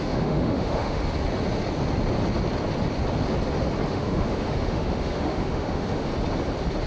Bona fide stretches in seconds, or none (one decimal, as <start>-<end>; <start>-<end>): 1.0-3.9; 6.1-6.9